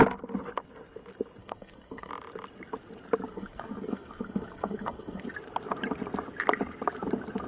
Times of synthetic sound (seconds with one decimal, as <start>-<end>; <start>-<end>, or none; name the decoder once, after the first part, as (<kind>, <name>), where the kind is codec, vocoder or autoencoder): 1.4-2.1 (codec, SNAC); 3.3-5.3